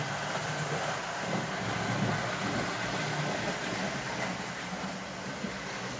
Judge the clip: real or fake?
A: real